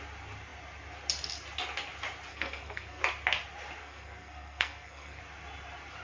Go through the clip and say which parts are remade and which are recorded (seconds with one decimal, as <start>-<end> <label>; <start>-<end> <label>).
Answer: 0.0-2.3 recorded; 2.3-3.0 remade; 3.0-3.8 recorded; 3.8-5.2 remade; 5.2-6.0 recorded